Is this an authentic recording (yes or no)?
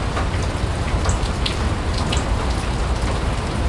yes